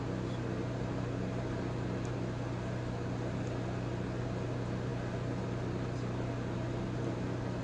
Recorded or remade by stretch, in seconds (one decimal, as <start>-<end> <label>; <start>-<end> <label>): 0.0-7.6 recorded